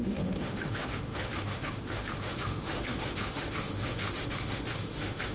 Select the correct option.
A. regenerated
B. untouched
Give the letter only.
A